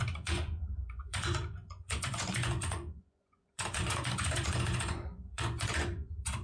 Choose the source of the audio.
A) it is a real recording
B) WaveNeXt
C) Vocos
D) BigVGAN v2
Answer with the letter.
C